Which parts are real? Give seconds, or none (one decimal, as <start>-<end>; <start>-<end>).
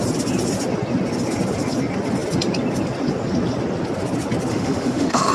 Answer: 0.0-4.5